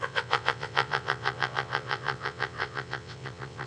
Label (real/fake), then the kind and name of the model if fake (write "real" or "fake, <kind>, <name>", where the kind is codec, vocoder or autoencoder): fake, vocoder, WaveNeXt